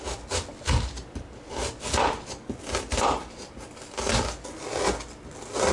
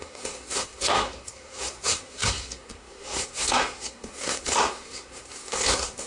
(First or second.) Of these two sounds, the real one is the first